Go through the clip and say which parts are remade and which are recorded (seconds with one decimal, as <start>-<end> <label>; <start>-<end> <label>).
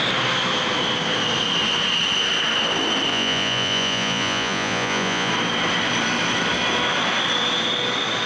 0.0-3.1 recorded; 3.1-5.3 remade; 5.3-8.3 recorded